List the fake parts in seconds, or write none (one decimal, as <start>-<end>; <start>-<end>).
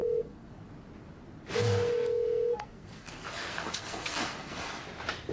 0.0-0.6; 1.6-4.8